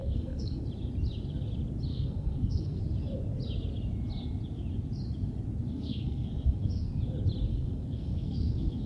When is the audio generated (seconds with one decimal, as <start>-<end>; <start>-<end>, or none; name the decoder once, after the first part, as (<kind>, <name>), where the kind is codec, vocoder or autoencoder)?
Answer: 0.0-0.6 (codec, SNAC); 1.9-2.8; 5.7-7.0; 7.5-8.9